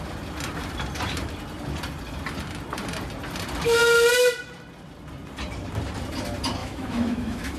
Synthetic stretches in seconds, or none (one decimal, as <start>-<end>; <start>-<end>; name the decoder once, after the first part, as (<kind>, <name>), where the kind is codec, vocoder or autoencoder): 6.6-7.6 (autoencoder, DAC-VAE)